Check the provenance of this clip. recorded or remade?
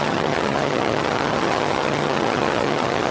remade